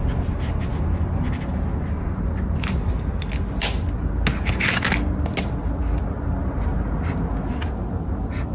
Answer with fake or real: real